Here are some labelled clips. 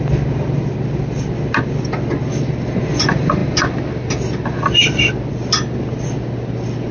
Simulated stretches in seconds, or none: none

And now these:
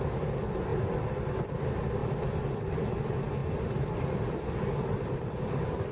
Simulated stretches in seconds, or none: none

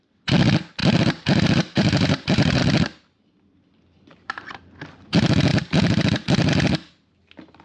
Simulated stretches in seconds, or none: 0.8-2.6 (vocoder, BigVGAN v2); 4.1-4.6; 5.5-6.5

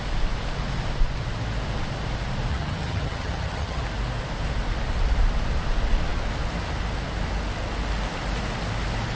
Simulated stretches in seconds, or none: 2.5-3.8 (vocoder, HiFi-GAN)

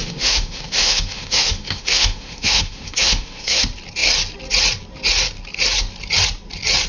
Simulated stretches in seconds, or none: 0.0-3.6 (autoencoder, DAC-VAE)

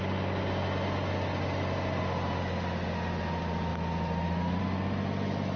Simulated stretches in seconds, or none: none

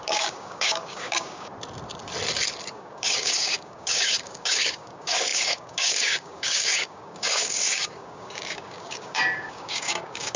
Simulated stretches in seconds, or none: 0.0-1.5 (codec, DAC); 2.7-10.4